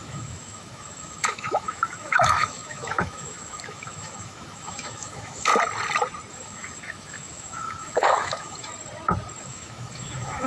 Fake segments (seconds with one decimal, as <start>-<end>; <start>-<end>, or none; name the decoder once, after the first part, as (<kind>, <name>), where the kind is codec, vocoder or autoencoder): 0.0-5.5 (autoencoder, DAC-VAE); 6.3-8.7; 9.4-10.5